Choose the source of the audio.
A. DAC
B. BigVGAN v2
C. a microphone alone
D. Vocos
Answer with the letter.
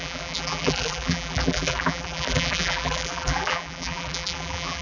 B